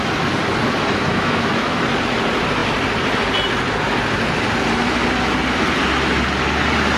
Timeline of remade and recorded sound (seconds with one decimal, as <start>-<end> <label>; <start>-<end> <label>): 0.0-1.0 recorded; 1.0-1.8 remade; 1.8-7.0 recorded